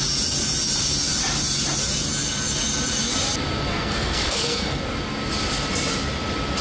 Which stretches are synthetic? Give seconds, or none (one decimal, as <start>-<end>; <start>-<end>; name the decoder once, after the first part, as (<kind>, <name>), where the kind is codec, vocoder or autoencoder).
3.7-4.8 (codec, SNAC)